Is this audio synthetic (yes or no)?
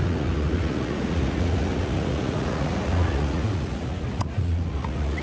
yes